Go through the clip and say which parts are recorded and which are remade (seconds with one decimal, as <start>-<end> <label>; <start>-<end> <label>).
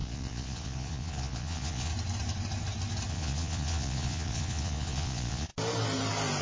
0.0-1.9 remade; 1.9-3.1 recorded; 3.1-5.5 remade; 5.5-6.4 recorded